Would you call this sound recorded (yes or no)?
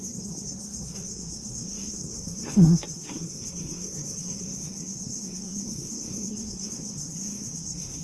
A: no